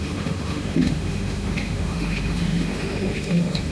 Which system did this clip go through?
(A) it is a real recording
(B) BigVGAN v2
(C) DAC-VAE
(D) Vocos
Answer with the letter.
C